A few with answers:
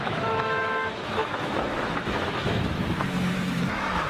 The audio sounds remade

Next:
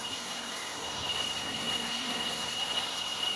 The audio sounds remade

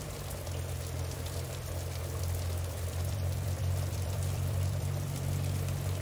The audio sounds remade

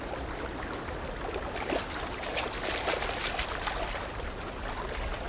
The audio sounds recorded